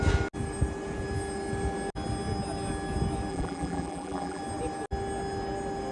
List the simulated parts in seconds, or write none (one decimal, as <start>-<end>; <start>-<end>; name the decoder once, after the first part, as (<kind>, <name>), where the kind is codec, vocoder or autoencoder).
3.3-4.4 (vocoder, BigVGAN v2)